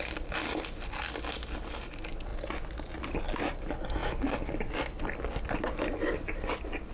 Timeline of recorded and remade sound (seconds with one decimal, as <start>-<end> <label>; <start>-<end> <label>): 0.0-6.9 recorded